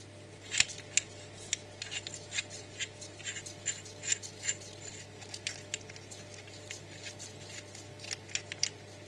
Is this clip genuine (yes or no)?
yes